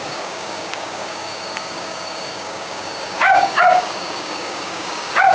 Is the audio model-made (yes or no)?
yes